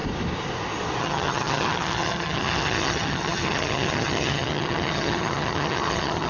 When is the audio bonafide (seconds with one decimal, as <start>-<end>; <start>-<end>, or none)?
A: 0.0-1.0